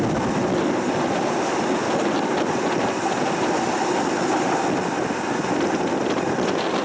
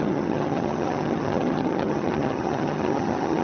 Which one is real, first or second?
first